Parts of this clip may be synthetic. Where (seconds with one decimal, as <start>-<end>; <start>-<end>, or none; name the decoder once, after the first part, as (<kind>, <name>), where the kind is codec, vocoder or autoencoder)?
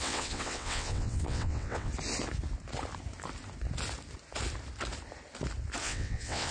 0.0-1.9 (vocoder, WaveNeXt); 5.8-6.5